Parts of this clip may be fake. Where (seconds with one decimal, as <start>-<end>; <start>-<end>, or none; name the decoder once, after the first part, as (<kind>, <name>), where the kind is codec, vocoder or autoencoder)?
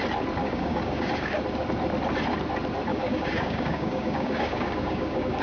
0.4-1.4 (codec, DAC); 2.9-5.4